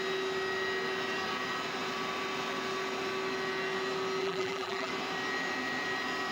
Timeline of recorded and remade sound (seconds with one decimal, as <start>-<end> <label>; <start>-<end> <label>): 0.0-4.2 recorded; 4.2-4.9 remade; 4.9-6.3 recorded